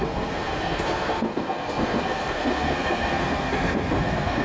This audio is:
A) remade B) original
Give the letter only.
A